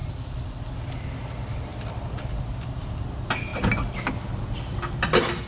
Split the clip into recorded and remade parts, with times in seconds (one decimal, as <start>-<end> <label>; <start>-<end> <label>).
0.0-0.6 remade; 0.6-1.7 recorded; 1.7-2.4 remade; 2.4-5.5 recorded